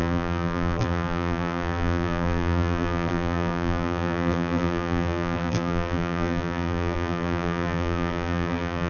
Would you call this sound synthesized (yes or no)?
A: yes